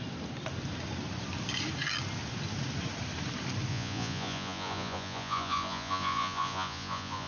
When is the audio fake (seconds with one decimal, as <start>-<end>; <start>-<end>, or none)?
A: 3.7-7.3

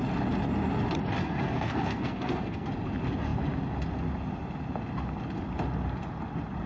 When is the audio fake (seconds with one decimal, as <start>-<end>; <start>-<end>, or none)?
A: 1.2-2.7